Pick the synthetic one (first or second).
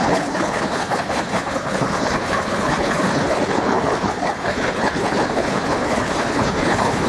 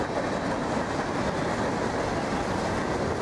first